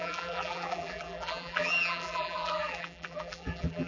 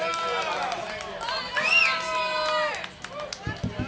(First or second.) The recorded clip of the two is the second